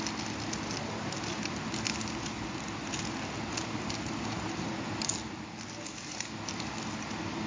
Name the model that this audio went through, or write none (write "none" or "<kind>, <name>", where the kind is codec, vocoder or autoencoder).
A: none